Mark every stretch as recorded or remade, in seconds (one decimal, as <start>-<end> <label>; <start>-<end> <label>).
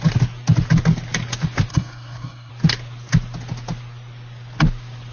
0.0-1.7 recorded; 1.7-2.5 remade; 2.5-5.1 recorded